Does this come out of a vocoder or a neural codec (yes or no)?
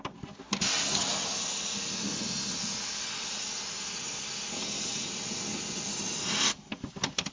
no